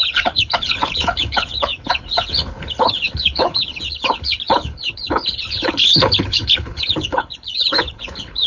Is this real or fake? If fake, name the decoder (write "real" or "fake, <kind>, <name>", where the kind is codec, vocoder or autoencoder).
fake, codec, HILCodec